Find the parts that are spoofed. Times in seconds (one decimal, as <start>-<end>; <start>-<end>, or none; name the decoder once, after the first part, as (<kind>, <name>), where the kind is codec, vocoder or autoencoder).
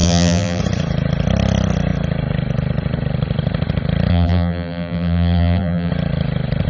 0.0-0.6 (vocoder, BigVGAN v2); 4.1-5.9